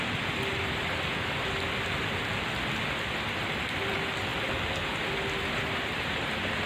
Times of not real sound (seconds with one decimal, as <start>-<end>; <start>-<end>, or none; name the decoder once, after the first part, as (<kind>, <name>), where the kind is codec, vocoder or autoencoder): none